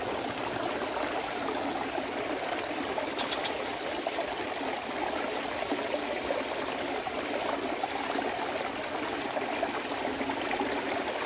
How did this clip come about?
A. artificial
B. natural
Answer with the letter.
B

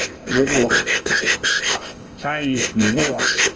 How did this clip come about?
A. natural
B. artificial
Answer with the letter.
B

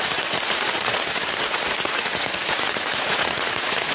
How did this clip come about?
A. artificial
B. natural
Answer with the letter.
A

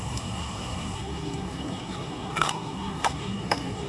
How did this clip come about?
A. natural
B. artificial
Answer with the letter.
B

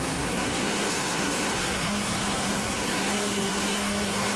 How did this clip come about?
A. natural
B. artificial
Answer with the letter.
B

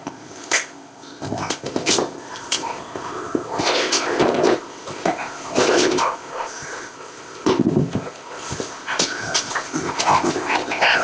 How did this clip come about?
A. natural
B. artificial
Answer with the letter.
B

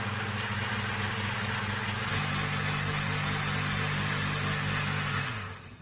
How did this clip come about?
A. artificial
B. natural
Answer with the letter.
B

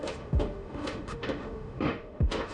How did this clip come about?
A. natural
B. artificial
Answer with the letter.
B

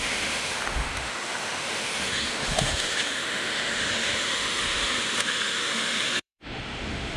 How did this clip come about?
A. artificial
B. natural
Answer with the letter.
A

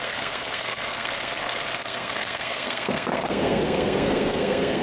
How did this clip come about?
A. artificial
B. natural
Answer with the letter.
A